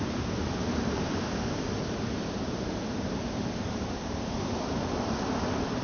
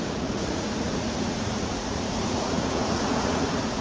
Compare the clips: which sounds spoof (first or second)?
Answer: second